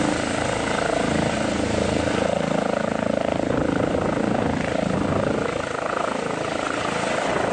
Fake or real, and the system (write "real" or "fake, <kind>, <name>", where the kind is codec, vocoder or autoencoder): real